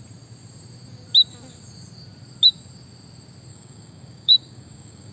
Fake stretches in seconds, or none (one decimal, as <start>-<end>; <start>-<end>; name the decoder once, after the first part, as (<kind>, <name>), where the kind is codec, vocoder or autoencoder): 3.5-5.1 (codec, DAC)